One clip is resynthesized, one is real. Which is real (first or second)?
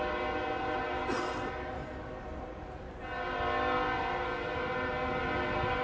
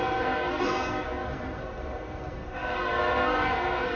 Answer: first